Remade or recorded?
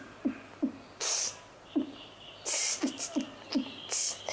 recorded